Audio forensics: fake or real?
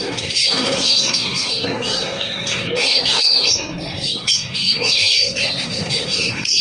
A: fake